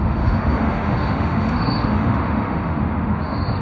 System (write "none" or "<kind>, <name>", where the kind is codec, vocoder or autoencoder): autoencoder, DAC-VAE